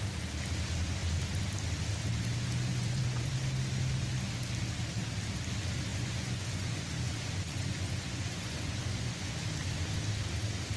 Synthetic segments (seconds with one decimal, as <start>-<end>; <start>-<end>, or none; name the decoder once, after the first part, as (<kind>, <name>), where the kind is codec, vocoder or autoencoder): 2.7-3.3 (vocoder, Vocos); 5.9-9.3